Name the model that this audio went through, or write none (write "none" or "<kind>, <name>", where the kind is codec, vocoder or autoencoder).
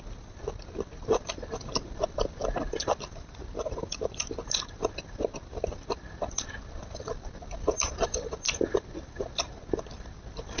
none